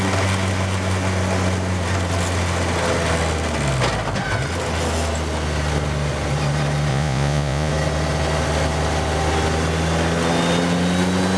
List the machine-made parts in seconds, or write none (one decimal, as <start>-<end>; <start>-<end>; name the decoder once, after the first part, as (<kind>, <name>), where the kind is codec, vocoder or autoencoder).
6.9-7.7 (vocoder, Vocos)